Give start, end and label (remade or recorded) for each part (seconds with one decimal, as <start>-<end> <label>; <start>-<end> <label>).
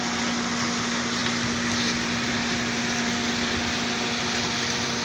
0.0-5.0 recorded